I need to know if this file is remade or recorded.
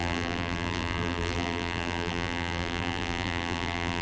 remade